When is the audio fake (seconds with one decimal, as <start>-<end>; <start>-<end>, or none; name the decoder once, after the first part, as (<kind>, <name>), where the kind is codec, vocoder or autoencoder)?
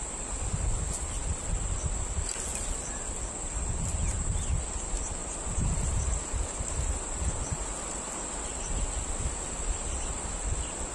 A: none